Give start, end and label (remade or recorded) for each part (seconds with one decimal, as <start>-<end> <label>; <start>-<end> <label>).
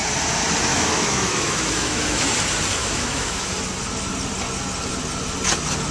0.0-0.7 recorded; 0.7-2.3 remade; 2.3-2.8 recorded; 2.8-3.5 remade; 3.5-5.9 recorded